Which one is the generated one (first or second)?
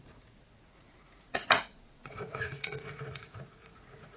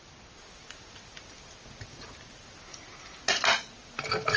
first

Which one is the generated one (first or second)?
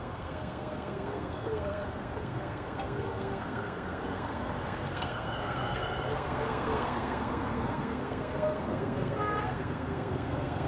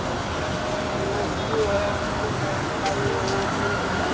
first